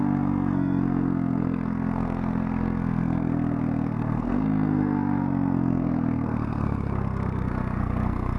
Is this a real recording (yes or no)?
no